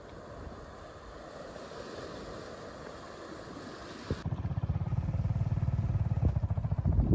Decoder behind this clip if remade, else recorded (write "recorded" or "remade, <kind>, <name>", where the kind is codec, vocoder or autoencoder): recorded